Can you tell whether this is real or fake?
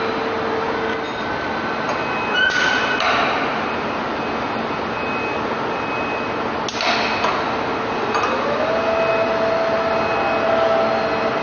real